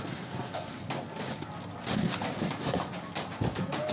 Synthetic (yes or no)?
no